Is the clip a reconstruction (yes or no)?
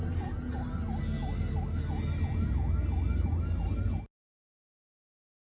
no